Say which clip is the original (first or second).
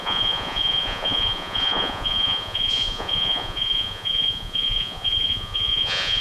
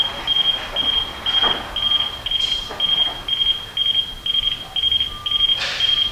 second